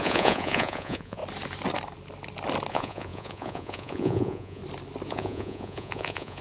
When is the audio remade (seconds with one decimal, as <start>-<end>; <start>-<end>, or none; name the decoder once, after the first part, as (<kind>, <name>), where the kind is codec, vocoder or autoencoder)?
0.0-1.2 (vocoder, Vocos); 2.7-4.6; 5.1-6.4